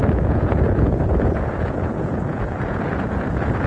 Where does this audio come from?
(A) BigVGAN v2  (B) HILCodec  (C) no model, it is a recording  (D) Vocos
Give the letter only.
D